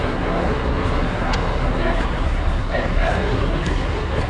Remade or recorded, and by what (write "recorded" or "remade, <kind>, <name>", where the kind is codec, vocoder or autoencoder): remade, codec, SNAC